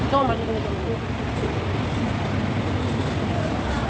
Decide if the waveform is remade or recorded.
recorded